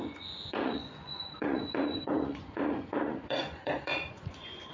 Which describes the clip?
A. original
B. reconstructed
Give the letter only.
B